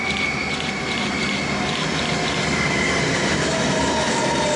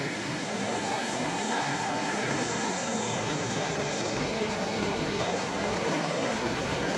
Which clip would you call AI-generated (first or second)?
second